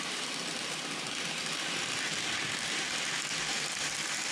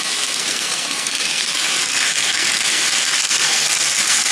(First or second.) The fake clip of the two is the second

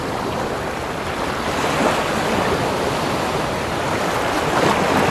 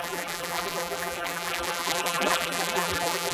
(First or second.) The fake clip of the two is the second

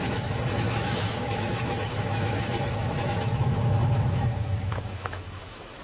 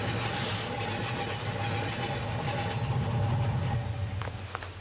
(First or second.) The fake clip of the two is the first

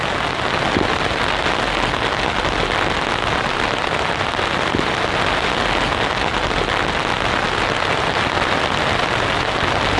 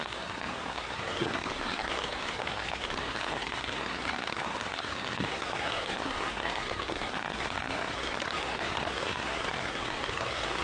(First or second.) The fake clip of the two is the second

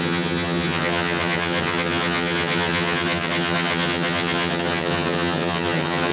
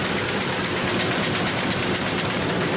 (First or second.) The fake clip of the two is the first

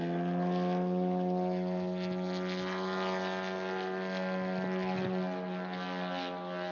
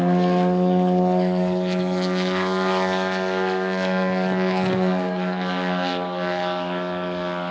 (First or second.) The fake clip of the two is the second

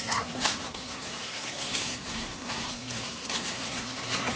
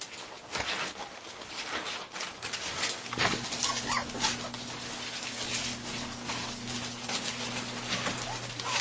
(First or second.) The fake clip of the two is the first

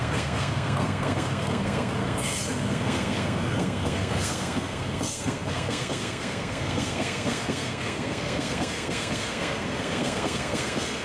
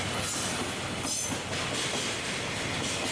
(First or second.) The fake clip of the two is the first